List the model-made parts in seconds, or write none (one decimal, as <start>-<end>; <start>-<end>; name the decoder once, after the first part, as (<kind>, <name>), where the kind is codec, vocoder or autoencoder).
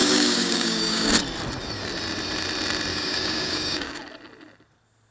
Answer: 0.0-1.1 (codec, DAC); 2.9-4.0